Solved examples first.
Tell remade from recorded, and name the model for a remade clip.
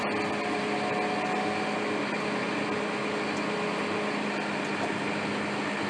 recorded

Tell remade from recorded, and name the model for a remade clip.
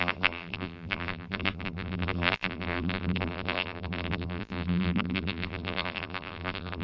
remade, vocoder, BigVGAN v2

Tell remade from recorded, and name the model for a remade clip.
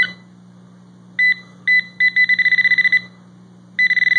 recorded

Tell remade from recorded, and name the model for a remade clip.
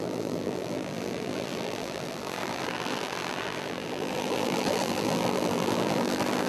remade, vocoder, BigVGAN v2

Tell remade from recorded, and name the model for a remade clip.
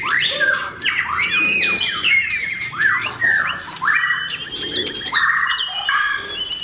remade, vocoder, BigVGAN v2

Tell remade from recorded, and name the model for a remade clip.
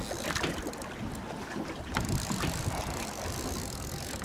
recorded